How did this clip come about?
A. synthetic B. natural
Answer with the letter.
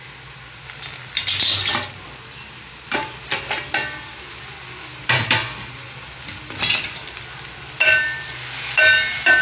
B